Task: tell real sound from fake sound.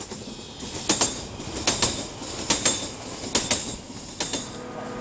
real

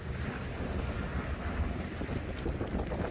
real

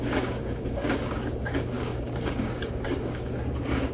fake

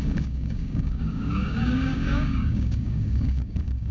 fake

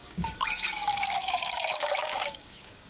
fake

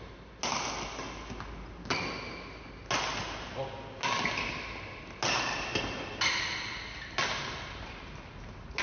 real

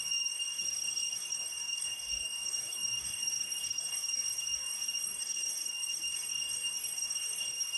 fake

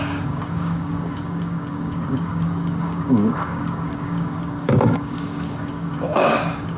fake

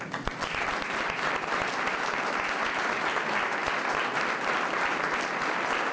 real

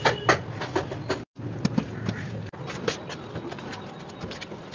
real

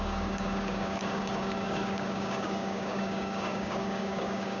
fake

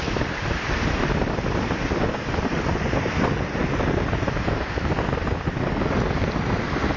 real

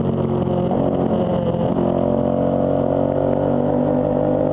real